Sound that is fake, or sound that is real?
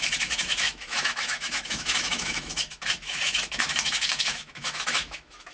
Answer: fake